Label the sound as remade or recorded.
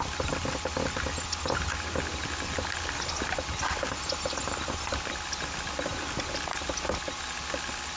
recorded